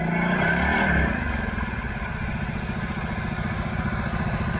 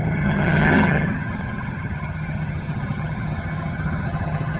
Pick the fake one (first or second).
second